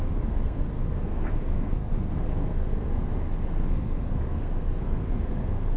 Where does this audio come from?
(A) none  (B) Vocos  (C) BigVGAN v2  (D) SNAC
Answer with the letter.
D